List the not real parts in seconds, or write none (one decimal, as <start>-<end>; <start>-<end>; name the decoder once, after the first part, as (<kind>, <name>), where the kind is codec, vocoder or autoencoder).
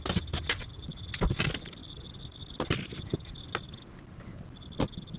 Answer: none